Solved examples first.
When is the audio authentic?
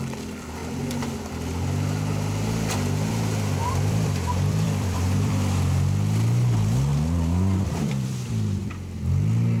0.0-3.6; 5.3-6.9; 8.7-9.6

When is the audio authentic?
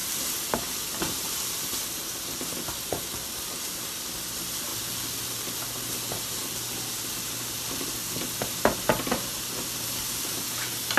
3.7-11.0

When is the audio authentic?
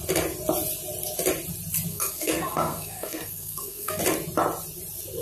0.0-1.9; 4.0-5.2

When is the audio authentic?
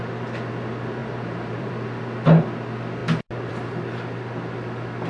0.0-1.0; 1.7-5.1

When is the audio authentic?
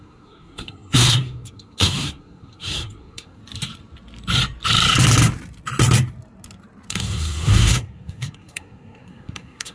3.4-6.9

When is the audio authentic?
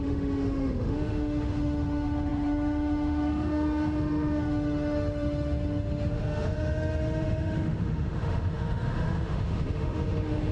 none